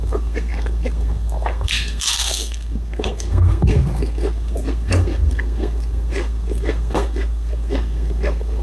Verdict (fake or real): fake